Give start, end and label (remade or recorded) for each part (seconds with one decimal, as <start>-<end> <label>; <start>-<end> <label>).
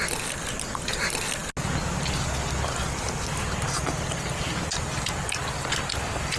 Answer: 0.0-6.4 recorded